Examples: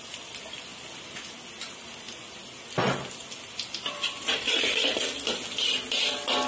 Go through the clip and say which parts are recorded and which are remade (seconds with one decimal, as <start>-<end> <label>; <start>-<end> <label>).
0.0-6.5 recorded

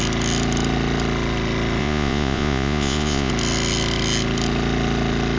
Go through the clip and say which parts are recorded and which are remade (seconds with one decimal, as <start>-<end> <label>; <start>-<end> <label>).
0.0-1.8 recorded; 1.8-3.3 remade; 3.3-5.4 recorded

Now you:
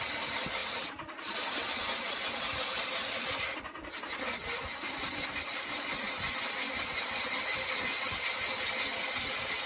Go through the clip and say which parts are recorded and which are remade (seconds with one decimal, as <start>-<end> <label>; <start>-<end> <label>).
0.0-0.6 recorded; 0.6-3.6 remade; 3.6-9.7 recorded

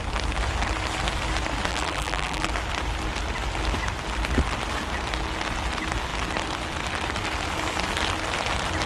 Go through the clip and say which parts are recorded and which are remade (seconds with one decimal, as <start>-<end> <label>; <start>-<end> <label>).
0.0-1.7 recorded; 1.7-2.5 remade; 2.5-8.9 recorded

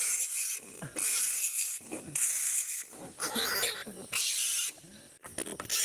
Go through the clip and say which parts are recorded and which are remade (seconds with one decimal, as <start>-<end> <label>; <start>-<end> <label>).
0.0-1.3 recorded; 1.3-3.2 remade; 3.2-5.8 recorded